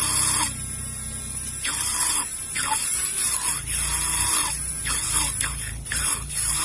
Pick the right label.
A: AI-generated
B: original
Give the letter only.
B